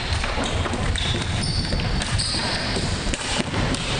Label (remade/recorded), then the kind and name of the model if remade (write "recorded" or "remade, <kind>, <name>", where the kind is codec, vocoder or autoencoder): remade, vocoder, BigVGAN v2